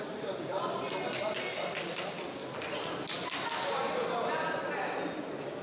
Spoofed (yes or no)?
no